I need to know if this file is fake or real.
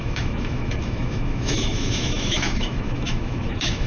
fake